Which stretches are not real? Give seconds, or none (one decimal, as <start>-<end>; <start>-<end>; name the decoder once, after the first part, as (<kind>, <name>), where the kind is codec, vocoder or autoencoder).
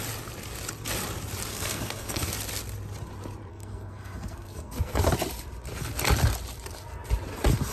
1.5-2.3 (codec, SNAC); 3.5-5.0